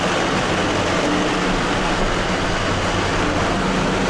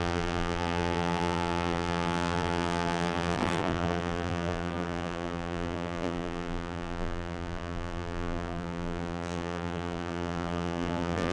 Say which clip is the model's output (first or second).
second